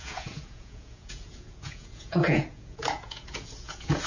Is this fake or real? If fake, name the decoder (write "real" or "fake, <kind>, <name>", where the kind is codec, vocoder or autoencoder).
fake, vocoder, Vocos